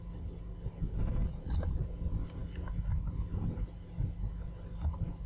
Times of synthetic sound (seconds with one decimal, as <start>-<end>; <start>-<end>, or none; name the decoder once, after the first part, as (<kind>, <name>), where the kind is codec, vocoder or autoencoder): 1.2-1.8 (vocoder, Vocos)